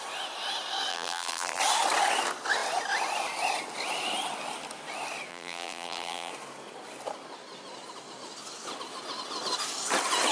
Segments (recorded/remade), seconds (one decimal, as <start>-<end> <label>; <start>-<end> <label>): 0.0-0.9 recorded; 0.9-1.6 remade; 1.6-5.3 recorded; 5.3-6.3 remade; 6.3-10.3 recorded